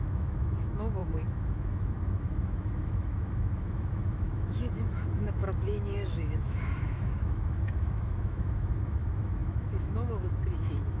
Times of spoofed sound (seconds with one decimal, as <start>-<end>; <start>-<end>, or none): 0.0-11.0